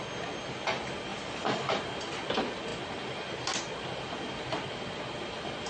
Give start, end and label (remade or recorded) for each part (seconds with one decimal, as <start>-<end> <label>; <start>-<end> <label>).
0.0-5.7 recorded